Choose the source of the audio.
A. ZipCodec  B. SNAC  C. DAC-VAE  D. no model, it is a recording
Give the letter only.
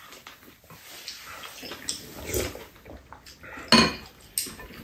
D